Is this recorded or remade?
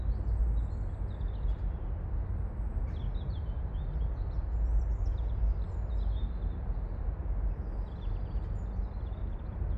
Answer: recorded